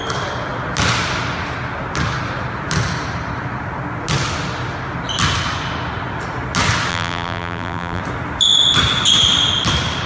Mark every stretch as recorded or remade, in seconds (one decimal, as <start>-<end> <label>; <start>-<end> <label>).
0.0-6.9 recorded; 6.9-8.0 remade; 8.0-10.1 recorded

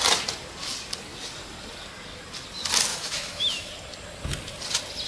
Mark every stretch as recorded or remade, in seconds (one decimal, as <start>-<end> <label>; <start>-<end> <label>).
0.0-2.9 recorded; 2.9-3.7 remade; 3.7-5.1 recorded

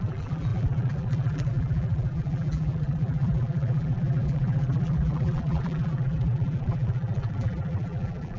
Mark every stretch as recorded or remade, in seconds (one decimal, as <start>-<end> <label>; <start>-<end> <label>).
0.0-8.4 remade

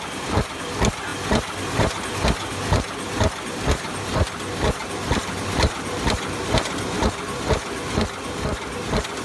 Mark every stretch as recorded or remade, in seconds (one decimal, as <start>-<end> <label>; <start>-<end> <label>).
0.0-9.2 recorded

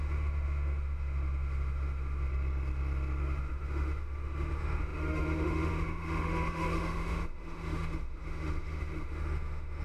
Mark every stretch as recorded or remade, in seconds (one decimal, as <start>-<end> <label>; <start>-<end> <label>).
0.0-2.3 remade; 2.3-3.2 recorded; 3.2-9.8 remade

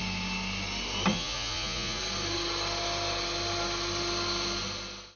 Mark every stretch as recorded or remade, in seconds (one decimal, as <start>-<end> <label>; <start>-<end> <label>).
0.0-1.1 recorded; 1.1-2.0 remade; 2.0-5.2 recorded

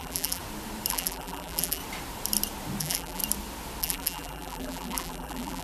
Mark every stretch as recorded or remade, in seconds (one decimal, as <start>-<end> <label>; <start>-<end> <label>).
0.0-0.4 remade; 0.4-0.9 recorded; 0.9-1.8 remade; 1.8-2.8 recorded; 2.8-3.2 remade; 3.2-3.8 recorded; 3.8-5.6 remade

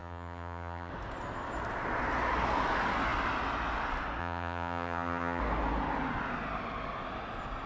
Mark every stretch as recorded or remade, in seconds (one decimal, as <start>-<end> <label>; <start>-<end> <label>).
0.0-0.9 remade; 0.9-4.2 recorded; 4.2-5.4 remade; 5.4-7.7 recorded